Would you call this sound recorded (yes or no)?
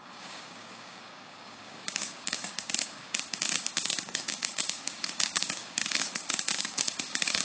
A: no